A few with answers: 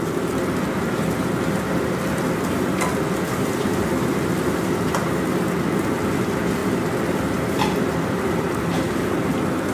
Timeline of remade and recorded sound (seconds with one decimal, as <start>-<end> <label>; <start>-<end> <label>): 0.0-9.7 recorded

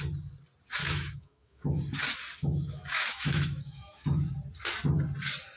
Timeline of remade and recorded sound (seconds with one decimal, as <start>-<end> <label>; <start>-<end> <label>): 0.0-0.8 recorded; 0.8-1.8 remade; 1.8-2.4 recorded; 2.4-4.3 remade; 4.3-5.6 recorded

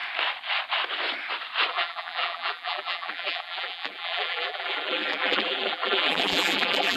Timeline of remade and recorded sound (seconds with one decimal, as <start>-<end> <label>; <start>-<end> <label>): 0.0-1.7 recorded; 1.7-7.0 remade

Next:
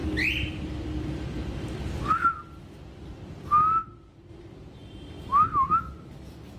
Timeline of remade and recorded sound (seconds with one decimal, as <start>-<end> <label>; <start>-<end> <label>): 0.0-2.6 remade; 2.6-4.8 recorded; 4.8-5.8 remade; 5.8-6.6 recorded

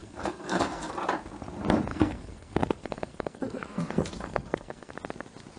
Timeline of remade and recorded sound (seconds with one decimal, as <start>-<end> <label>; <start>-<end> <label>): 0.0-0.9 remade; 0.9-1.9 recorded; 1.9-4.9 remade; 4.9-5.6 recorded

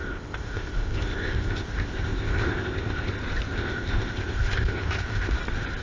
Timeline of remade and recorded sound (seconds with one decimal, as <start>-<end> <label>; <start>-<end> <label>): 0.0-3.1 remade; 3.1-3.5 recorded; 3.5-5.3 remade; 5.3-5.8 recorded

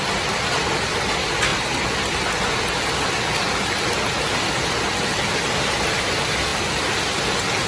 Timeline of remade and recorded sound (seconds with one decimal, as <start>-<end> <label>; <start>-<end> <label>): 0.0-7.7 recorded

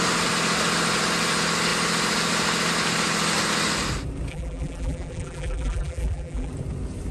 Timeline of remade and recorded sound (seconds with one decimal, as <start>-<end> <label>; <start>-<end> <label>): 0.0-4.3 recorded; 4.3-6.5 remade; 6.5-7.1 recorded